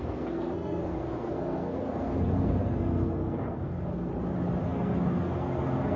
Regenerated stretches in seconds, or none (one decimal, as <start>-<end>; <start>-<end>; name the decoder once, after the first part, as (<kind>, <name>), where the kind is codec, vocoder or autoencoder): 0.0-4.1 (codec, SNAC); 4.6-6.0